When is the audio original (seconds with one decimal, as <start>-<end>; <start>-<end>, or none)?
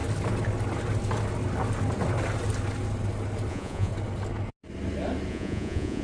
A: 0.0-3.5; 3.9-5.3